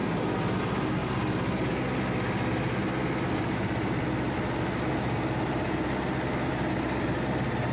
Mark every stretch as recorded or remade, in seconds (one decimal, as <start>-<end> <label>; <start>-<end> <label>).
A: 0.0-7.7 recorded